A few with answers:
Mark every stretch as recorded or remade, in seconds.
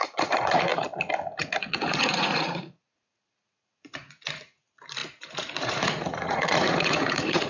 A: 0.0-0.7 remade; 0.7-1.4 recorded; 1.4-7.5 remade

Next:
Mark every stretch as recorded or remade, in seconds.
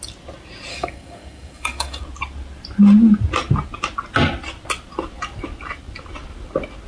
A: 0.0-0.7 recorded; 0.7-2.0 remade; 2.0-6.9 recorded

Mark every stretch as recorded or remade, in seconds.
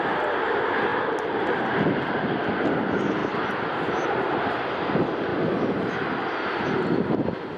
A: 0.0-7.6 recorded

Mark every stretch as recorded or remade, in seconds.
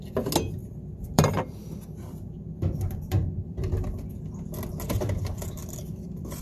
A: 0.0-0.6 recorded; 0.6-4.1 remade; 4.1-5.6 recorded; 5.6-6.4 remade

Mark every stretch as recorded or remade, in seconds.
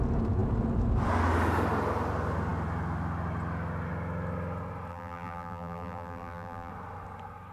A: 0.0-4.9 recorded; 4.9-6.7 remade; 6.7-7.5 recorded